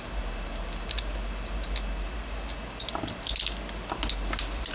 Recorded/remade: recorded